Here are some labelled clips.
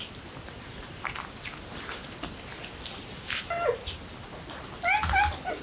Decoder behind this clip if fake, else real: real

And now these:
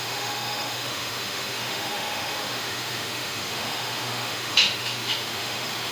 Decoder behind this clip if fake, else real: fake, autoencoder, DAC-VAE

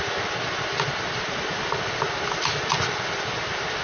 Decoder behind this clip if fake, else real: real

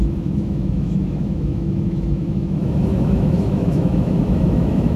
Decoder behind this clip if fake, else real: fake, autoencoder, DAC-VAE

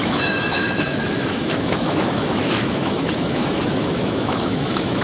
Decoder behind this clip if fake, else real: fake, autoencoder, DAC-VAE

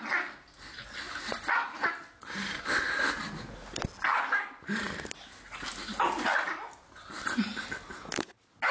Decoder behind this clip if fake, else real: real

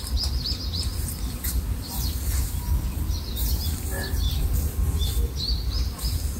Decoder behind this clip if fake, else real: real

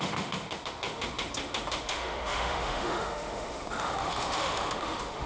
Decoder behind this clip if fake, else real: fake, autoencoder, DAC-VAE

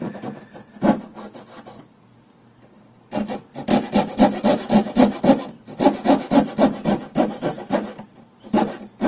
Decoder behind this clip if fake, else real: real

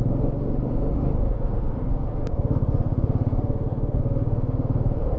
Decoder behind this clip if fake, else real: fake, autoencoder, DAC-VAE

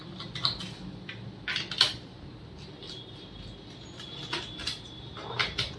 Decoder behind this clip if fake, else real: real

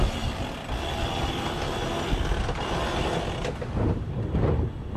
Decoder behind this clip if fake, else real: real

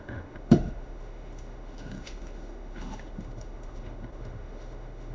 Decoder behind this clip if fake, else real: fake, autoencoder, DAC-VAE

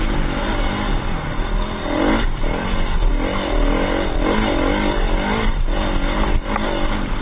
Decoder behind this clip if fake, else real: real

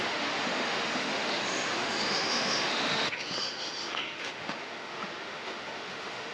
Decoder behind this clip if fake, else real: fake, autoencoder, DAC-VAE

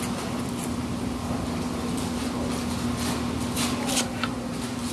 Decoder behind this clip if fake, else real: real